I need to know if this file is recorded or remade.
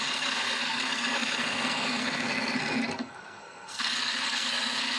remade